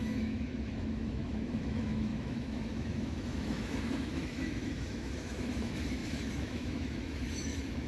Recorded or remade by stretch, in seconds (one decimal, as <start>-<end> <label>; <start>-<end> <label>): 0.0-7.9 remade